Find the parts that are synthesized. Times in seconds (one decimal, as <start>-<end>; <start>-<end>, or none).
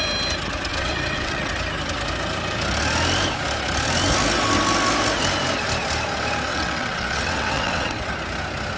0.7-1.5; 6.5-8.1